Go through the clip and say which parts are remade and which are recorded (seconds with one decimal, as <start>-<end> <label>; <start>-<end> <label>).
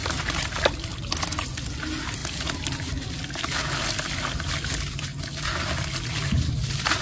0.0-1.0 remade; 1.0-2.2 recorded; 2.2-4.2 remade; 4.2-5.1 recorded; 5.1-6.0 remade; 6.0-7.0 recorded